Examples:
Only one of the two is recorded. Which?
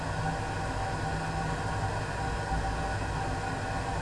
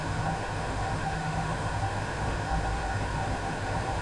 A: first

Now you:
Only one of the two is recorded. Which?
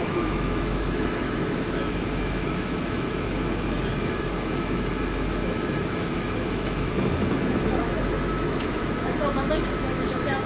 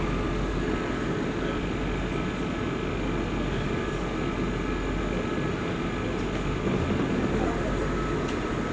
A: second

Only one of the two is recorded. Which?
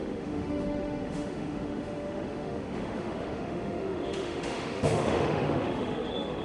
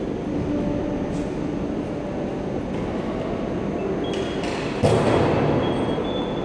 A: second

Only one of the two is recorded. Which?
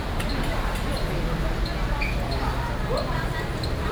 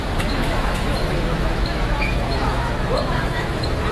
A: first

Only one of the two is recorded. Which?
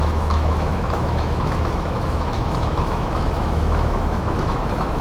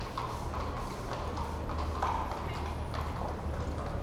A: second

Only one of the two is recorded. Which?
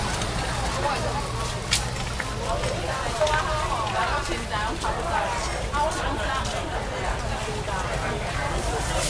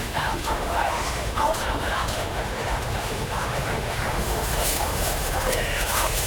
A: first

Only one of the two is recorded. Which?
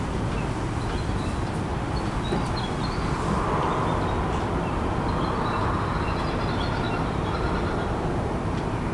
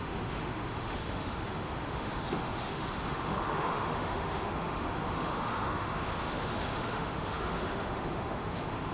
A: first